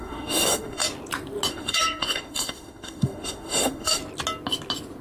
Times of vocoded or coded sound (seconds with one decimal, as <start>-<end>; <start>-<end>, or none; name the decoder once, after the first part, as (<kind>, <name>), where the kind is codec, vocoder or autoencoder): 0.0-0.8 (autoencoder, DAC-VAE); 1.5-4.0